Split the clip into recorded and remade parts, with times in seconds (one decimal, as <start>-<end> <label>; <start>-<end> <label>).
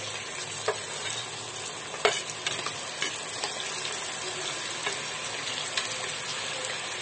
0.0-7.0 recorded